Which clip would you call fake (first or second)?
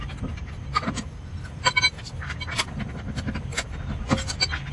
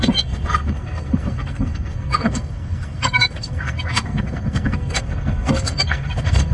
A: second